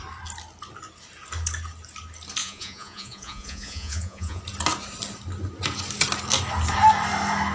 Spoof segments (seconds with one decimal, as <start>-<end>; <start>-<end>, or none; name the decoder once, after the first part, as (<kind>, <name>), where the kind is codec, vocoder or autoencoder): 2.4-4.4 (vocoder, Vocos)